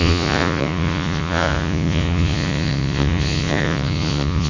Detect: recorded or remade remade